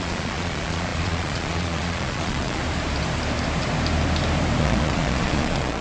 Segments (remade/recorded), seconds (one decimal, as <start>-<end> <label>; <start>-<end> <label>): 0.0-2.6 remade; 2.6-4.6 recorded; 4.6-5.8 remade